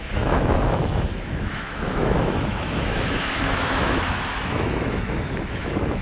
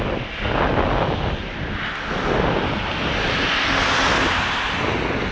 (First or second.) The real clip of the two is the second